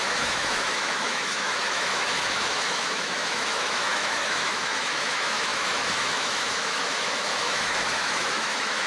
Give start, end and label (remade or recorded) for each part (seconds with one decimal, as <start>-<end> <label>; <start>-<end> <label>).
0.0-8.9 remade